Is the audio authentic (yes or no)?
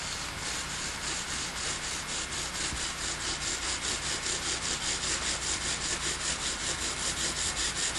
yes